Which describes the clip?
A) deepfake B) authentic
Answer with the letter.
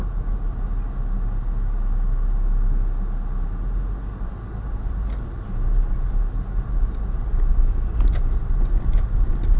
B